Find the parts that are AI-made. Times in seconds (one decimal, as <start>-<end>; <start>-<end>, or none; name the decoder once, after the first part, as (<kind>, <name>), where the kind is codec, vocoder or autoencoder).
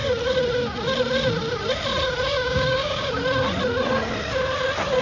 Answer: 2.3-3.1 (codec, DAC)